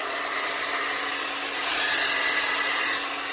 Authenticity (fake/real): real